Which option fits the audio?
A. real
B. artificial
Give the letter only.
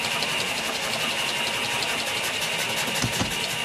A